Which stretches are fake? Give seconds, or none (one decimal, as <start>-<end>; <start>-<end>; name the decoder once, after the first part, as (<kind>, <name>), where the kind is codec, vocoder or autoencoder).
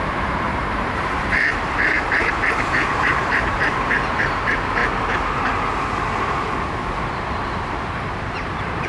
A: 0.0-4.8 (vocoder, BigVGAN v2); 5.8-8.9